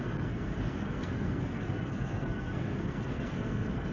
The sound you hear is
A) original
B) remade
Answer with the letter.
B